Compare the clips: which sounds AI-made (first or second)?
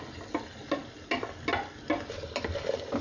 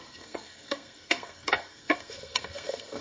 second